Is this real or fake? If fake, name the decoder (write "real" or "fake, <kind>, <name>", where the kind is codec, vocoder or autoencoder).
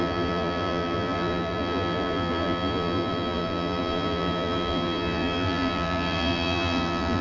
fake, vocoder, BigVGAN v2